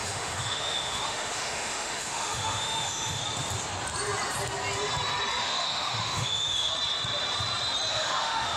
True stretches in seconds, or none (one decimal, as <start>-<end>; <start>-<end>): 3.2-5.4; 6.7-7.9